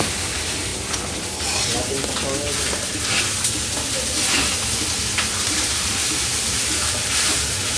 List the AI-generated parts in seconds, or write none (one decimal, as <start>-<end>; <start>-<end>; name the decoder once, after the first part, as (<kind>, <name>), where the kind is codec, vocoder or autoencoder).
0.0-0.7 (vocoder, BigVGAN v2); 5.4-7.8